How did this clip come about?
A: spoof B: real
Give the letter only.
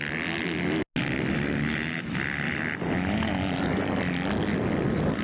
B